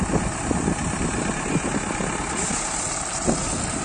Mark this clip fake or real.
real